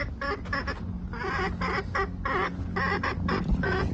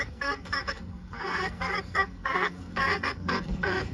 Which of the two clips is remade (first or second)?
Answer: second